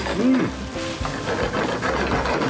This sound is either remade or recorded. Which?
recorded